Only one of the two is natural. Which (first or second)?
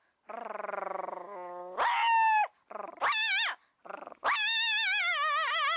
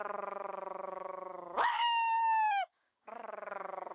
first